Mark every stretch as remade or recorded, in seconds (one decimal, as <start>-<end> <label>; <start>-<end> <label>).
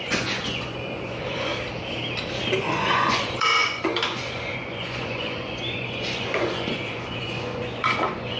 0.0-1.5 remade; 1.5-2.6 recorded; 2.6-8.4 remade